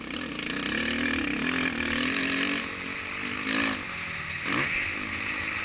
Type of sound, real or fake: real